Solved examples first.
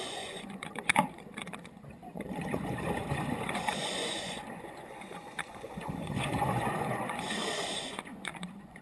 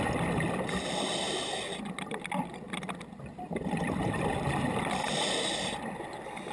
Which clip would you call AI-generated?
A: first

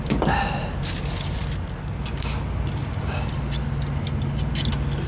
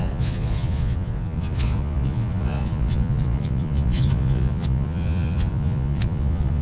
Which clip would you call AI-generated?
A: second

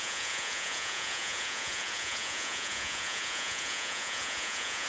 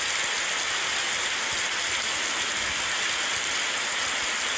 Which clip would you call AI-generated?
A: first